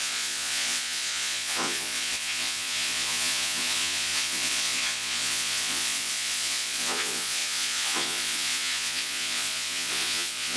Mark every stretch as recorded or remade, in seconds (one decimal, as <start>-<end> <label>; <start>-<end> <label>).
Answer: 0.0-10.6 remade